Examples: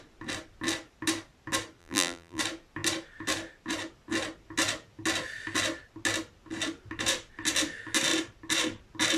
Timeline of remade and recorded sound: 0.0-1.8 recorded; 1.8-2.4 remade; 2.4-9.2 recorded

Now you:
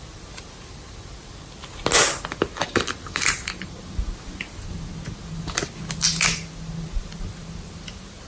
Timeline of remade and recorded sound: 0.0-2.5 recorded; 2.5-3.8 remade; 3.8-8.3 recorded